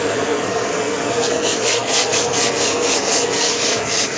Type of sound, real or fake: fake